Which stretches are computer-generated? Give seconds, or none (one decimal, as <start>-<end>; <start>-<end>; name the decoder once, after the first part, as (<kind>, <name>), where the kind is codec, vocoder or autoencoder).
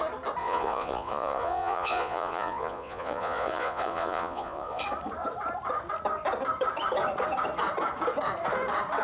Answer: 0.4-4.8 (vocoder, Vocos)